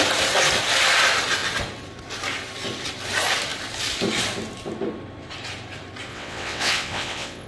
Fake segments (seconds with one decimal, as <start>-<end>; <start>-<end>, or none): 6.1-7.5